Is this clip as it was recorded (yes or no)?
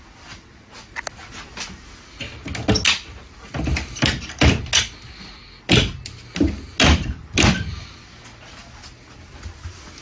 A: yes